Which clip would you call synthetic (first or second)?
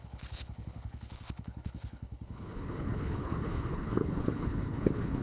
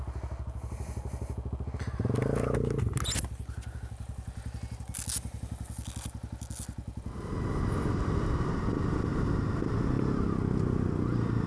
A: first